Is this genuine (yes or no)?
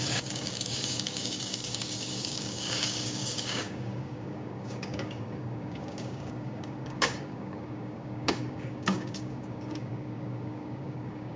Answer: no